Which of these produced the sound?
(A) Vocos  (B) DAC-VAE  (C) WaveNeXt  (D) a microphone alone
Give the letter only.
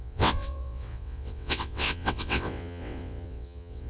C